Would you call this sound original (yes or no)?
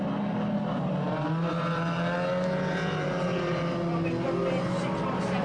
yes